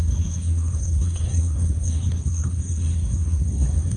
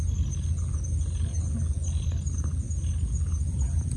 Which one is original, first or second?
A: second